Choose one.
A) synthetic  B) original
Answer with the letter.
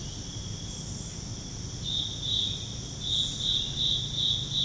B